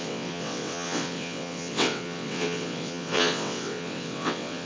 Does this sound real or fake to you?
fake